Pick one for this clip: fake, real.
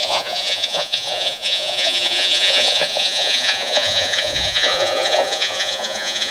fake